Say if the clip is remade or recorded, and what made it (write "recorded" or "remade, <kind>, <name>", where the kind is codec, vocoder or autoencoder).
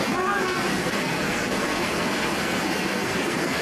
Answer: remade, codec, SNAC